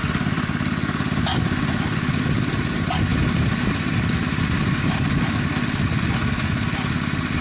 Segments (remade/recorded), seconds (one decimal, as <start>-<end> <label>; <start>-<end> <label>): 0.0-3.1 recorded; 3.1-5.0 remade; 5.0-7.4 recorded